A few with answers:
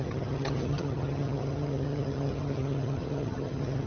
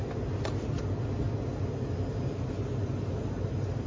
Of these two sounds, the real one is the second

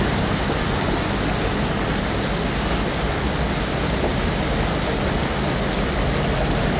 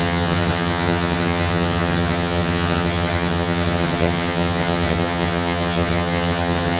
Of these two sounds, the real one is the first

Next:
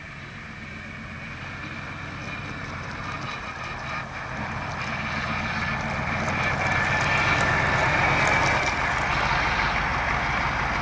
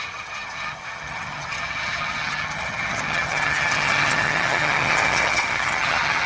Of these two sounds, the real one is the first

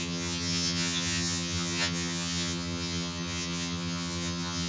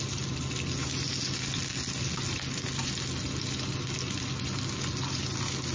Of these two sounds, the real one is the second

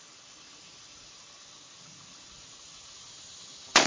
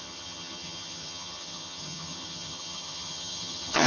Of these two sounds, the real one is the first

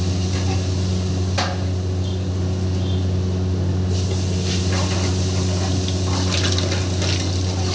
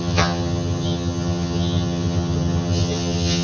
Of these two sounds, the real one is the first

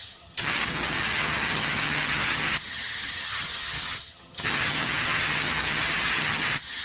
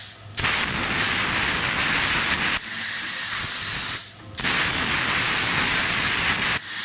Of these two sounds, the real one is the second